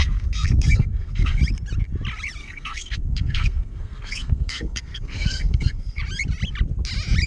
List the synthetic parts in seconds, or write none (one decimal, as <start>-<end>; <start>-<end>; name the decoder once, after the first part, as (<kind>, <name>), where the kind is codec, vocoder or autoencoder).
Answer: 0.0-1.4 (codec, SNAC); 2.4-6.0